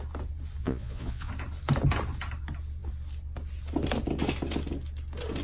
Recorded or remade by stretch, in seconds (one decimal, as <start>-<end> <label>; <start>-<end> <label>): 0.0-0.6 recorded; 0.6-1.3 remade; 1.3-5.4 recorded